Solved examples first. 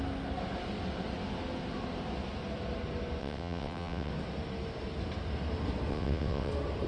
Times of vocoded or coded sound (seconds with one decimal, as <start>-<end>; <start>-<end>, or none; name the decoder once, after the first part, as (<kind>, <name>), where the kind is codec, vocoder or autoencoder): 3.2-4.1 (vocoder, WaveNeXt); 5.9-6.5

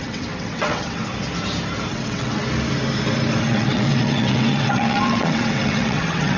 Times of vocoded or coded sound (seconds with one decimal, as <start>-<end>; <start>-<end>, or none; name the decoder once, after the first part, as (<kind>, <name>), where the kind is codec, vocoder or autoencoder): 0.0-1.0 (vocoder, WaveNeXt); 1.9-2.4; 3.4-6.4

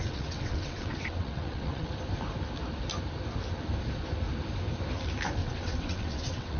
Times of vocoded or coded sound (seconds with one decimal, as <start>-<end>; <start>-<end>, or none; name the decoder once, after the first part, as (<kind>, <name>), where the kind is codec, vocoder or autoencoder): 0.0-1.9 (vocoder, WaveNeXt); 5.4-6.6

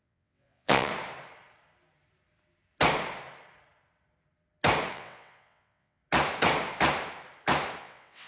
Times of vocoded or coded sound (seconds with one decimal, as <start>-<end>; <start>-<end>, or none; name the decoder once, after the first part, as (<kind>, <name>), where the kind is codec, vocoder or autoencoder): 0.0-0.9 (vocoder, WaveNeXt); 4.9-6.0; 7.8-8.3

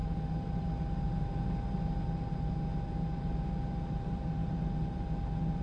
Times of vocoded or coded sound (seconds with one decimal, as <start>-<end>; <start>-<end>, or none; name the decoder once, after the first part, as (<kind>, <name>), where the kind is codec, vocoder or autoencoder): none

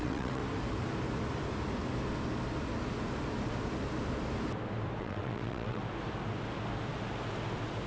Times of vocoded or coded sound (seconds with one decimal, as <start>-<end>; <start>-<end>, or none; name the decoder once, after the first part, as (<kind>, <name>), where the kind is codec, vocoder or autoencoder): 0.0-0.4 (vocoder, WaveNeXt); 5.0-5.8